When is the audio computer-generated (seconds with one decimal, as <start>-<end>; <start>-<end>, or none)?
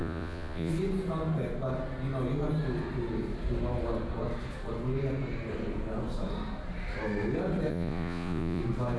0.0-0.7; 7.7-8.6